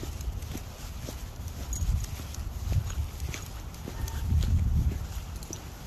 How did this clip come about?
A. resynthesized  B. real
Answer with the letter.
B